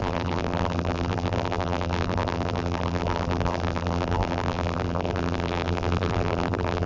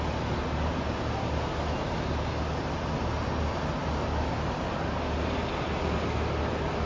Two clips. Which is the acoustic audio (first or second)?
second